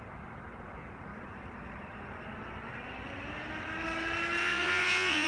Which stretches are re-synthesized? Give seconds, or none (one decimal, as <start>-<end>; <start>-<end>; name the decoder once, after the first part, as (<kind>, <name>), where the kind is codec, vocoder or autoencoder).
4.4-5.3 (vocoder, Vocos)